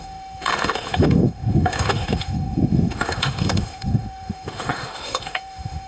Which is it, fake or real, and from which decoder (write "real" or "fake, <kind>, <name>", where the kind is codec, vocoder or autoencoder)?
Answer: fake, autoencoder, DAC-VAE